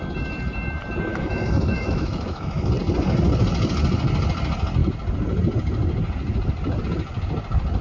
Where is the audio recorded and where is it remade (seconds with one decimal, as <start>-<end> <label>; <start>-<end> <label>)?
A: 0.0-1.1 recorded; 1.1-2.7 remade; 2.7-7.8 recorded